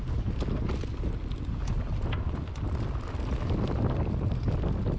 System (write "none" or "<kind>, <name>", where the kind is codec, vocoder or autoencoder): none